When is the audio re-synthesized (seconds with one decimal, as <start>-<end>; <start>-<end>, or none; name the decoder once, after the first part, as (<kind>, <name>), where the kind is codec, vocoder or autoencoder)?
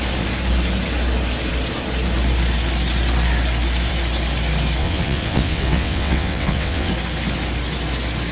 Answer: 4.8-6.9 (vocoder, WaveNeXt)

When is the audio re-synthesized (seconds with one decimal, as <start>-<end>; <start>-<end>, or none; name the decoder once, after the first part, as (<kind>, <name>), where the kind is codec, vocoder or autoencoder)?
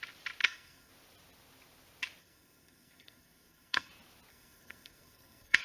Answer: 0.4-0.9 (codec, SNAC); 2.2-3.9; 4.3-5.6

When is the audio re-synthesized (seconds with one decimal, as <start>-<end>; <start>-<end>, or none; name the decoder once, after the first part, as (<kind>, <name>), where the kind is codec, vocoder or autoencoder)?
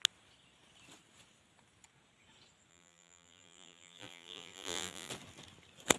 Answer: 2.7-5.1 (vocoder, BigVGAN v2)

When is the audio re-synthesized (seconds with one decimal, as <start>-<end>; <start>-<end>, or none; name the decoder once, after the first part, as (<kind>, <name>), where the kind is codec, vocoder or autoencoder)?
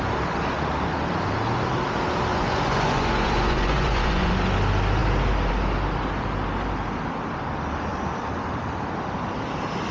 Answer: 2.3-4.3 (vocoder, Vocos)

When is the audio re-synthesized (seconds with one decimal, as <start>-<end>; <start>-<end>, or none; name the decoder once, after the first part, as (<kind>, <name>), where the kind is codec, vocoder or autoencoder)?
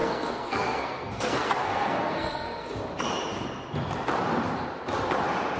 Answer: 0.0-2.7 (codec, SNAC)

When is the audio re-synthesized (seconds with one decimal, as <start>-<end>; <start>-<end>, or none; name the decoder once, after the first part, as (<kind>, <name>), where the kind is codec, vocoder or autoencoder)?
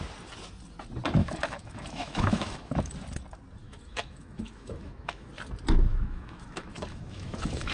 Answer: 1.2-2.9 (autoencoder, DAC-VAE); 3.6-5.3; 5.9-7.7